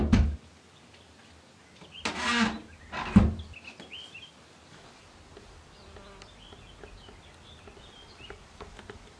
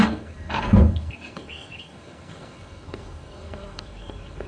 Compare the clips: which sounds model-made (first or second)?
second